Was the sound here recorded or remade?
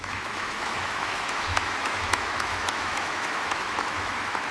remade